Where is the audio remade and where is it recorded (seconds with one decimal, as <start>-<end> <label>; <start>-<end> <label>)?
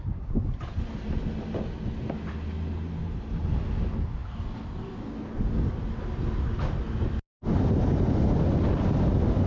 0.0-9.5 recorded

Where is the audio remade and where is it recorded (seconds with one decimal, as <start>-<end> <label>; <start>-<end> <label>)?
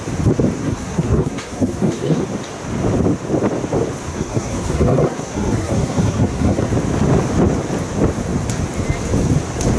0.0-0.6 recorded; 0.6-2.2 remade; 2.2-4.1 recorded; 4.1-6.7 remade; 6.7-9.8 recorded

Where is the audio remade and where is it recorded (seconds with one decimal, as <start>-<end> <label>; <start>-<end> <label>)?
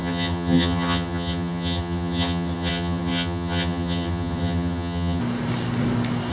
0.0-5.2 remade; 5.2-6.3 recorded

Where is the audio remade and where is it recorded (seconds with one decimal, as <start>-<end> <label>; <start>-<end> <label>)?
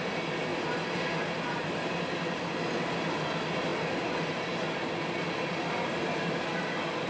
0.0-7.1 recorded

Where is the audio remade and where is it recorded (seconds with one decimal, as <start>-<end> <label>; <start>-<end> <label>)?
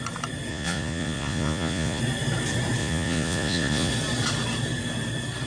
0.0-0.5 recorded; 0.5-2.0 remade; 2.0-2.8 recorded; 2.8-3.9 remade; 3.9-5.5 recorded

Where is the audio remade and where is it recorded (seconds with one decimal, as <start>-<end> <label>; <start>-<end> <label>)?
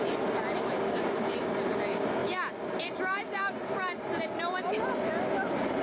0.0-5.8 recorded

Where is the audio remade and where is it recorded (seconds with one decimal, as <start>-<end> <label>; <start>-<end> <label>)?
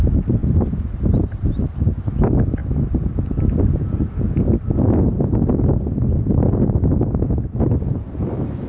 0.0-8.7 recorded